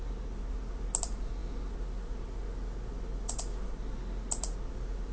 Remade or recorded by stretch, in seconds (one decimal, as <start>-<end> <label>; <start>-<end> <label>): 0.0-5.1 recorded